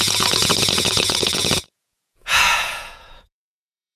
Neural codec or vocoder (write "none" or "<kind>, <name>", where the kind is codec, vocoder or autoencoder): vocoder, Vocos